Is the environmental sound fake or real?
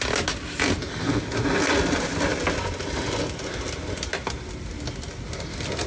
real